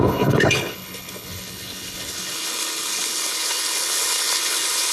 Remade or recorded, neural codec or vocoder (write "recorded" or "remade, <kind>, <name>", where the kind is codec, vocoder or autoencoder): remade, codec, HILCodec